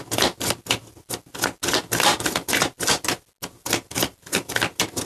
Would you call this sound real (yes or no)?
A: yes